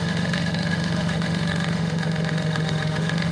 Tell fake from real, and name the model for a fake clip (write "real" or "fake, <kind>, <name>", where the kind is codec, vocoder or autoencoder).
fake, autoencoder, DAC-VAE